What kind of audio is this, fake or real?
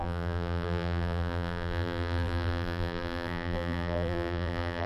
fake